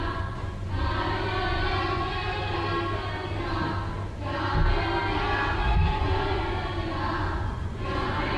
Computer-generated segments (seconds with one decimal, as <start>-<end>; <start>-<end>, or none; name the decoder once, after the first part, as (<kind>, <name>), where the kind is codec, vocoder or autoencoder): 0.0-0.8 (vocoder, Vocos); 1.5-2.2; 5.6-8.4